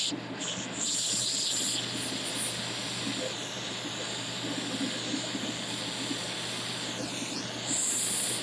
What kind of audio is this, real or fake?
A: real